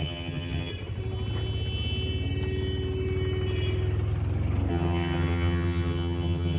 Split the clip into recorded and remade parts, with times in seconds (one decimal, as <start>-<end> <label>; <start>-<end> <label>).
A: 0.0-0.7 remade; 0.7-4.7 recorded; 4.7-6.6 remade

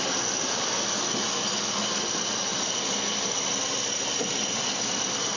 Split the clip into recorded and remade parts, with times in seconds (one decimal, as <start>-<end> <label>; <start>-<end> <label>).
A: 0.0-5.4 recorded

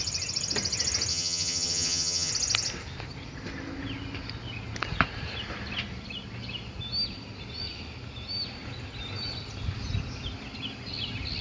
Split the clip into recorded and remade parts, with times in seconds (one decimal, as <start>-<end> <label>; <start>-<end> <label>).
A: 0.0-1.1 recorded; 1.1-2.3 remade; 2.3-11.4 recorded

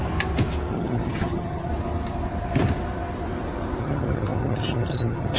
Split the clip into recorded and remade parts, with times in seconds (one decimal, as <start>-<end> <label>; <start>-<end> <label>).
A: 0.0-0.7 recorded; 0.7-1.7 remade; 1.7-3.8 recorded; 3.8-5.4 remade